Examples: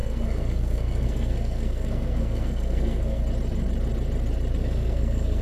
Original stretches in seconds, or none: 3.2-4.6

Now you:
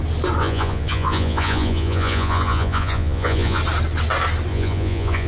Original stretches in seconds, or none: 0.0-0.4; 3.6-4.5